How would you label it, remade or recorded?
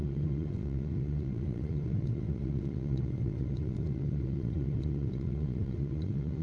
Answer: remade